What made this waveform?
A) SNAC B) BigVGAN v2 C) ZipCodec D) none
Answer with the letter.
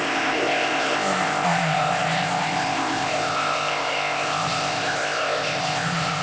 C